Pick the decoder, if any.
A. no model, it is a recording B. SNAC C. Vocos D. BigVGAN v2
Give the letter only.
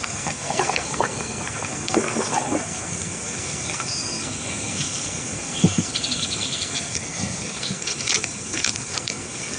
B